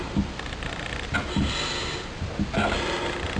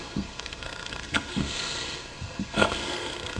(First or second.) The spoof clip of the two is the second